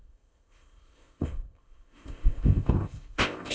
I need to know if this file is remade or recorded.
remade